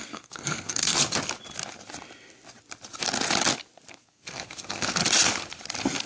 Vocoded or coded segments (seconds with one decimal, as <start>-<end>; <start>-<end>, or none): 0.0-1.0; 3.9-5.0